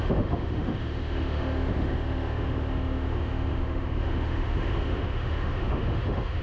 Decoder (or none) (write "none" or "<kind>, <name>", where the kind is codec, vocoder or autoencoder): autoencoder, DAC-VAE